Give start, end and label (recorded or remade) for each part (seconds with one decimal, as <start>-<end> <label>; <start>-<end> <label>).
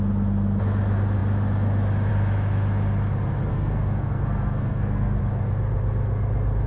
0.0-3.5 recorded; 3.5-5.2 remade; 5.2-6.7 recorded